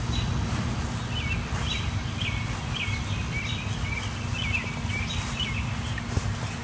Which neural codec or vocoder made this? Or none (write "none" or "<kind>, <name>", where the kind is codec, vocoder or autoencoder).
none